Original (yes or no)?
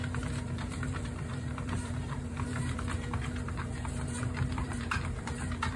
no